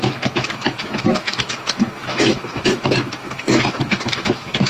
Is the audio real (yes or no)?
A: no